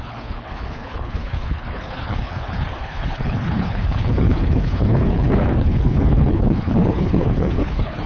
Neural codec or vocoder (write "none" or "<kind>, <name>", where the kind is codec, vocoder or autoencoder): codec, HILCodec